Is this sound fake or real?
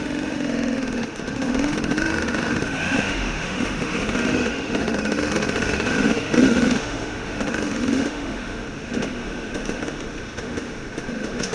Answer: fake